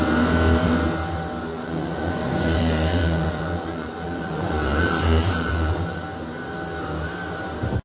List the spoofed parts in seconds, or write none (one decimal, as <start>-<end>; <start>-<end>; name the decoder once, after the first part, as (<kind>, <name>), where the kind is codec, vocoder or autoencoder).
1.5-6.0 (vocoder, Vocos)